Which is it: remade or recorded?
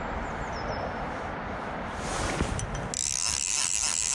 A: recorded